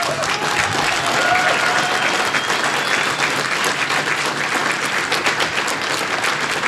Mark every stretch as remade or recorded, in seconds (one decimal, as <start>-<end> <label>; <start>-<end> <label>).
0.0-6.7 recorded